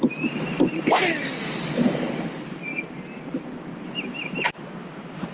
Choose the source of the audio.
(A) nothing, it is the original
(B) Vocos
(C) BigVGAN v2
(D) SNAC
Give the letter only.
C